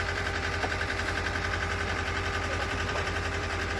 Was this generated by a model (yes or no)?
yes